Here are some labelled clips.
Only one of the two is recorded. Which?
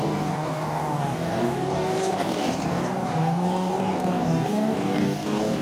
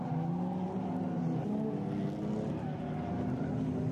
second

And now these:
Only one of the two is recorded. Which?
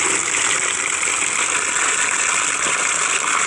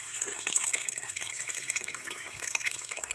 first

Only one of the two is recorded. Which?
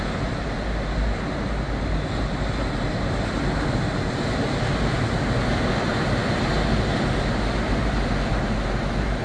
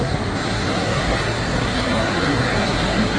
first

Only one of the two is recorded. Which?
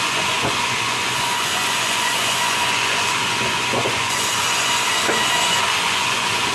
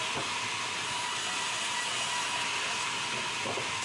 second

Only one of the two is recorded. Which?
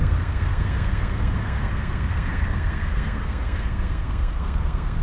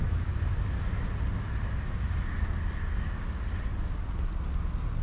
second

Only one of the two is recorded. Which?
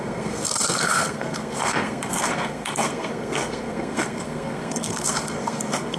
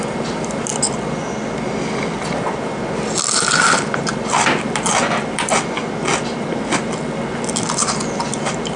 second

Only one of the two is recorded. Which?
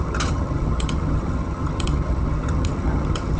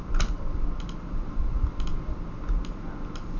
second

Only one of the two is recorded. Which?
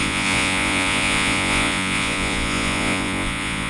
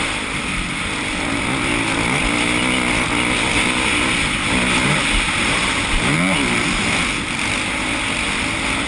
second